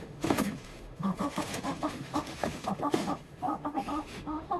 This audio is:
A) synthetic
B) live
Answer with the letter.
A